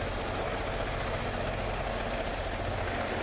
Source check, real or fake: real